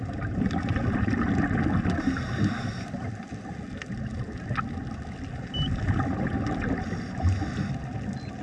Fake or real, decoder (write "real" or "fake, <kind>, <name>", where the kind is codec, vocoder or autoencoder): real